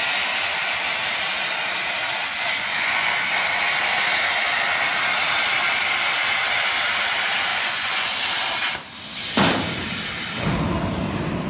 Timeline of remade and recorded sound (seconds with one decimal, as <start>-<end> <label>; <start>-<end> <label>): 0.0-2.2 recorded; 2.2-3.1 remade; 3.1-7.5 recorded; 7.5-8.2 remade; 8.2-11.5 recorded